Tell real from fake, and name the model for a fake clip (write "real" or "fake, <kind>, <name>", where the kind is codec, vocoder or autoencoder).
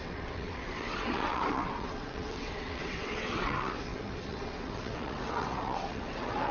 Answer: fake, vocoder, WaveNeXt